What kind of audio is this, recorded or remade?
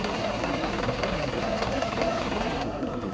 remade